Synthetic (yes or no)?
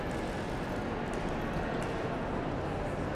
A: no